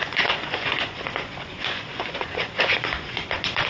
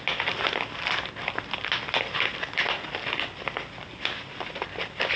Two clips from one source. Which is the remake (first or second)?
first